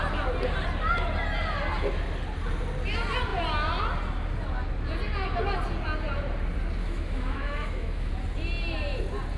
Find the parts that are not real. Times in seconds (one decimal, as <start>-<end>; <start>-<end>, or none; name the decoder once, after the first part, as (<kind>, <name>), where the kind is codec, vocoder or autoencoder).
6.8-8.1 (autoencoder, DAC-VAE)